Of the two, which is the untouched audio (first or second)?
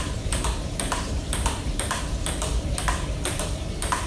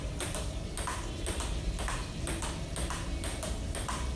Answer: second